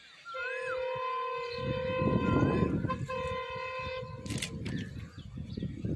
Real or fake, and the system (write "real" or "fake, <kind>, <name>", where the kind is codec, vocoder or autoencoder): real